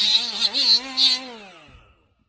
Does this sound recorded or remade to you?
recorded